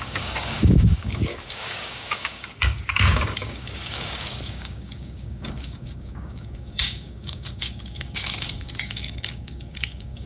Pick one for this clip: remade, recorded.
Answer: remade